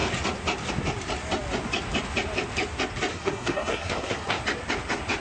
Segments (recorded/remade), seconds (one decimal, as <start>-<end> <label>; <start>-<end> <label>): 0.0-3.1 recorded; 3.1-4.4 remade; 4.4-5.2 recorded